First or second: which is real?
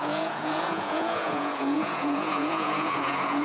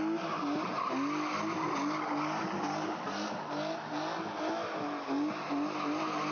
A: second